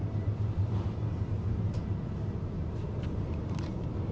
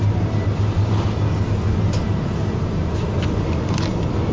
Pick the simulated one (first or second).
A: first